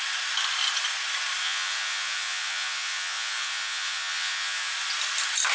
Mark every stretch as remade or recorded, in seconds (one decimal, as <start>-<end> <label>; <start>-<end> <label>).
0.0-1.4 recorded; 1.4-4.7 remade; 4.7-5.5 recorded